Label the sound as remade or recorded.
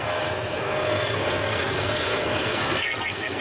remade